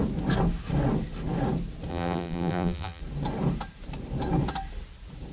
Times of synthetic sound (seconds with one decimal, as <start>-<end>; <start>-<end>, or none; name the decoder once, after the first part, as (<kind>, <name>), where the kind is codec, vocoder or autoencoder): 1.9-3.0 (vocoder, BigVGAN v2)